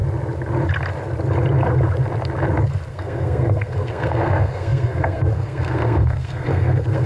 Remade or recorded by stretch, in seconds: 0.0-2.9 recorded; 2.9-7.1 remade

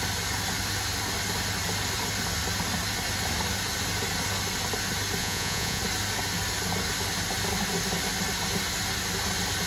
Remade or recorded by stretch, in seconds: 0.0-5.2 recorded; 5.2-5.8 remade; 5.8-9.7 recorded

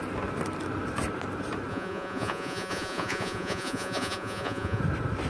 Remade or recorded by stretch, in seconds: 0.0-1.7 recorded; 1.7-4.8 remade; 4.8-5.3 recorded